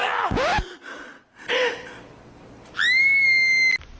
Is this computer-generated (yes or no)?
no